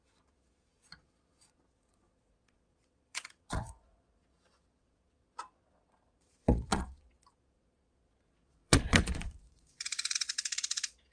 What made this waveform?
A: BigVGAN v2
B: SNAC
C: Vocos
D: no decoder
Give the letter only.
C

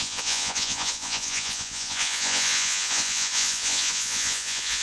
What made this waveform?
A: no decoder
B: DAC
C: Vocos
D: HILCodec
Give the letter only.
C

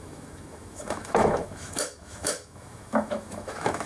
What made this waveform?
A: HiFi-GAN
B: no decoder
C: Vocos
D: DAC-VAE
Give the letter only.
D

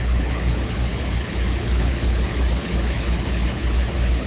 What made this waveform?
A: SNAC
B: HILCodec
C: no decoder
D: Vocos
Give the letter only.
B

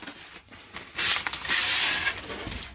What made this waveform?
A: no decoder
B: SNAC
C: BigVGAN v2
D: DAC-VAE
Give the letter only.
A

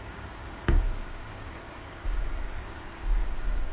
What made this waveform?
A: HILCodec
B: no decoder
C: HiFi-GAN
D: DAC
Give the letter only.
D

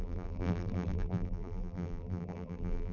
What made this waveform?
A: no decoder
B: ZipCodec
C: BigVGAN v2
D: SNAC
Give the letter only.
C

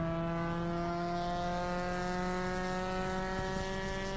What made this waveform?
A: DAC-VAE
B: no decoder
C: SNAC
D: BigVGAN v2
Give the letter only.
B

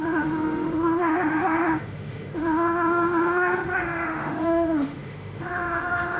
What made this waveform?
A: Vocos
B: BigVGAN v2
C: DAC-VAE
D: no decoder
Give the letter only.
C